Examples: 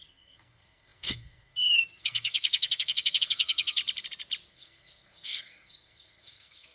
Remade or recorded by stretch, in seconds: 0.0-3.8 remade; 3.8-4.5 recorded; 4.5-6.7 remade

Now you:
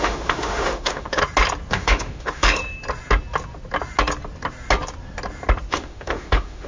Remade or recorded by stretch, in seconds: 0.0-1.2 remade; 1.2-1.7 recorded; 1.7-2.6 remade; 2.6-5.7 recorded; 5.7-6.7 remade

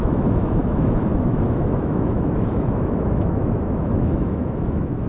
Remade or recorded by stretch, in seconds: 0.0-5.1 remade